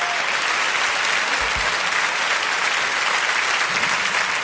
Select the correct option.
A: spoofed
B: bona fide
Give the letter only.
B